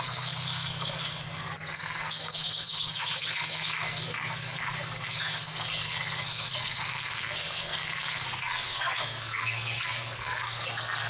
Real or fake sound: fake